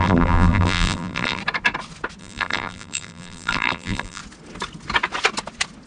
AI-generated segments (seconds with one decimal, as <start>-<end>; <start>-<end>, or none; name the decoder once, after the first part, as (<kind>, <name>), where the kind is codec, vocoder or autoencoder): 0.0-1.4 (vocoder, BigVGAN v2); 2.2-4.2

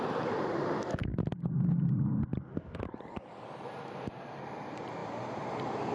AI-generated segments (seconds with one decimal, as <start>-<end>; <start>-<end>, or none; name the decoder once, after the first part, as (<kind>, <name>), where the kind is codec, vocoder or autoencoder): none

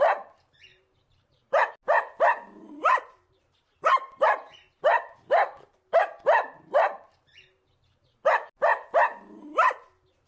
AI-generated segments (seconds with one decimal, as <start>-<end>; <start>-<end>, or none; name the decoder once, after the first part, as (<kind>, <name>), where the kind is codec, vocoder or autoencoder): 0.7-1.7 (vocoder, BigVGAN v2); 2.6-3.8

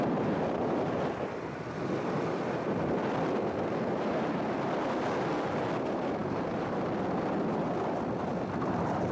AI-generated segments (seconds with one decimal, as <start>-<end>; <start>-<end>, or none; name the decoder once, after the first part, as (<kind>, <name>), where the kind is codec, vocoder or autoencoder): none